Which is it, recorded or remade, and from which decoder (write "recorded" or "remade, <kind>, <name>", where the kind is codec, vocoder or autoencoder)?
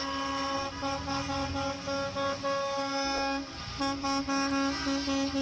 recorded